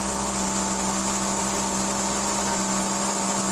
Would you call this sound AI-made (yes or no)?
no